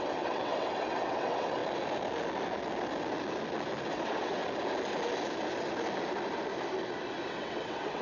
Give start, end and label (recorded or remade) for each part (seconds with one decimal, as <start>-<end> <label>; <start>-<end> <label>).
0.0-1.6 remade; 1.6-3.9 recorded; 3.9-4.4 remade; 4.4-7.3 recorded; 7.3-8.0 remade